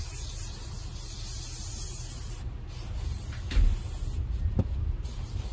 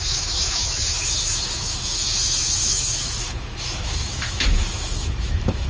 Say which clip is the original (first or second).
first